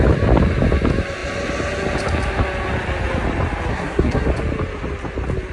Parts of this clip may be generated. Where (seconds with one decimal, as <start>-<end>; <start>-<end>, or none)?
3.7-4.3